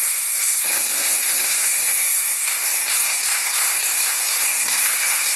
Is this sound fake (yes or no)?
yes